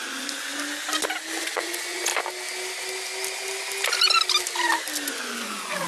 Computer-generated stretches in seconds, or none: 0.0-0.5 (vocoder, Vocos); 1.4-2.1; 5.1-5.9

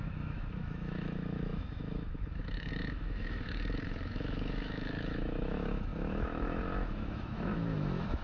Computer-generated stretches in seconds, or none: 0.0-8.2 (autoencoder, DAC-VAE)

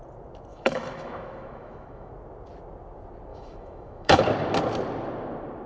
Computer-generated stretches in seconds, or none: 0.5-2.1 (autoencoder, DAC-VAE); 3.3-4.2